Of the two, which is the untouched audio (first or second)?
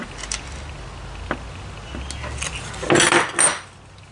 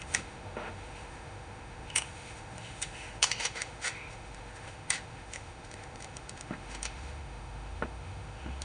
first